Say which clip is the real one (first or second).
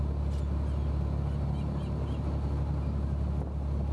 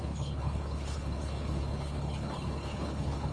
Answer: first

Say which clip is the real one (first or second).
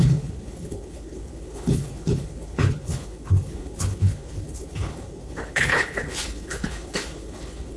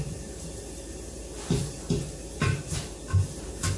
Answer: second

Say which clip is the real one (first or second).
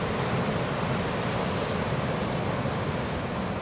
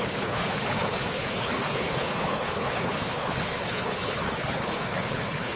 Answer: first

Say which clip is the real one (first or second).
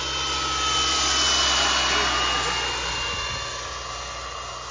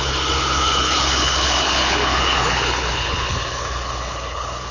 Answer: first